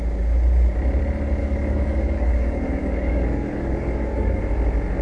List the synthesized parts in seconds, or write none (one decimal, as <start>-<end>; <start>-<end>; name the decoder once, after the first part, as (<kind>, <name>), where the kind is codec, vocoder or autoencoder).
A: 1.4-4.4 (codec, DAC)